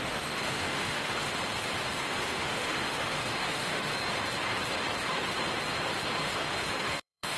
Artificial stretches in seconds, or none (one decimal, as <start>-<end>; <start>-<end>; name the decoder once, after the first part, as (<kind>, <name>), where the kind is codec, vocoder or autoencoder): 0.0-1.3 (autoencoder, DAC-VAE); 2.0-3.9; 6.2-7.4